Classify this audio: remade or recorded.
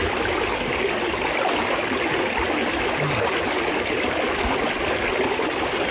recorded